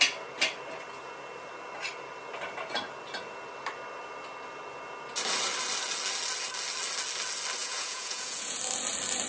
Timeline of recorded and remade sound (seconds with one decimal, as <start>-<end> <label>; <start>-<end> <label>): 0.0-7.6 recorded; 7.6-8.6 remade; 8.6-9.3 recorded

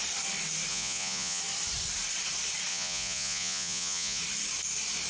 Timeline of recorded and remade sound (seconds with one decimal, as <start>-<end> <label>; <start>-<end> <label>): 0.0-0.7 recorded; 0.7-1.4 remade; 1.4-2.7 recorded; 2.7-4.2 remade; 4.2-5.1 recorded

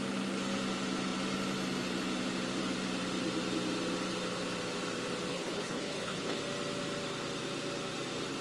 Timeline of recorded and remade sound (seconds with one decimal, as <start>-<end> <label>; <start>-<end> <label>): 0.0-5.3 recorded; 5.3-6.4 remade; 6.4-8.4 recorded

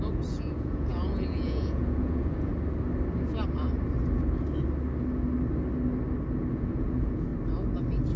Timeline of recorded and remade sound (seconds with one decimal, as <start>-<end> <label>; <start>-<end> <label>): 0.0-2.5 remade; 2.5-6.5 recorded; 6.5-7.3 remade; 7.3-8.2 recorded

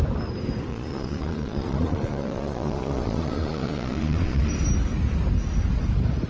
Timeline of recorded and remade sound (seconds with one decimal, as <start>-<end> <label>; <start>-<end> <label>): 0.0-0.7 recorded; 0.7-4.5 remade; 4.5-6.3 recorded